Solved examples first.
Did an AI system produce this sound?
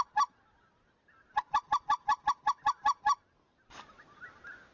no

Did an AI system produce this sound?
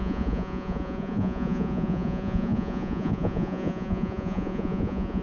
yes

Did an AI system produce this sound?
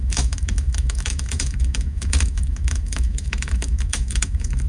yes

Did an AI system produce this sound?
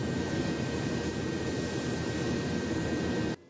yes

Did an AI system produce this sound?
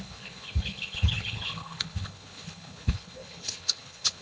yes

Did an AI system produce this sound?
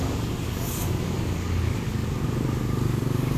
yes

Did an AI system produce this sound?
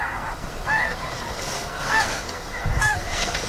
yes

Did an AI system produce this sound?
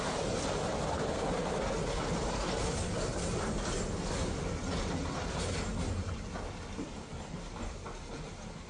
no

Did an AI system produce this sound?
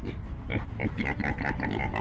no